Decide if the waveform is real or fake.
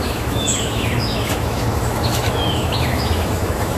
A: fake